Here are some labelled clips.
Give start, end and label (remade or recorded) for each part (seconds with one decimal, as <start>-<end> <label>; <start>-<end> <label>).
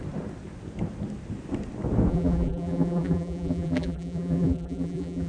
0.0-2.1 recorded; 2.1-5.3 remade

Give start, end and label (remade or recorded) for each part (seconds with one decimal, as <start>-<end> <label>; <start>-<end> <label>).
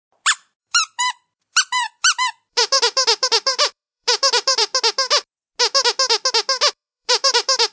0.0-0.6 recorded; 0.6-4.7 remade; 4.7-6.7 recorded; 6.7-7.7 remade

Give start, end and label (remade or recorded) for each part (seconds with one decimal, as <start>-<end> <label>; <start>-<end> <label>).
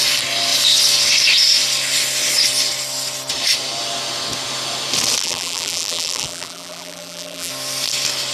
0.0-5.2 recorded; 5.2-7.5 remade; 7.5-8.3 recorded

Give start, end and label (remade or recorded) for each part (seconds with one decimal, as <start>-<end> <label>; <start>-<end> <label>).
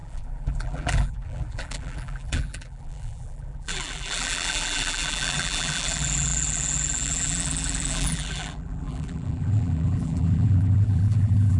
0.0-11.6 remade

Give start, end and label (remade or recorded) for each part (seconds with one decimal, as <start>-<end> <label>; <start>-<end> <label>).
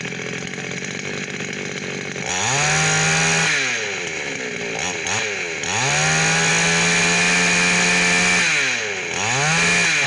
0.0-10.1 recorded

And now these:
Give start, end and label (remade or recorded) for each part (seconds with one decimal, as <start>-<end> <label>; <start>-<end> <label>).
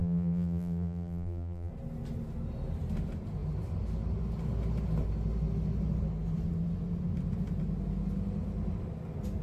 0.0-1.7 remade; 1.7-9.4 recorded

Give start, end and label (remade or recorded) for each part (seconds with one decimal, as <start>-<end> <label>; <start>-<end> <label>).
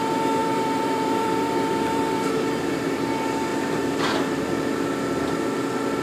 0.0-0.4 recorded; 0.4-2.7 remade; 2.7-3.5 recorded; 3.5-4.7 remade; 4.7-6.0 recorded